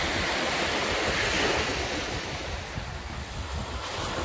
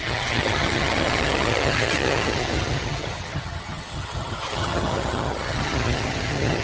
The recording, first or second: first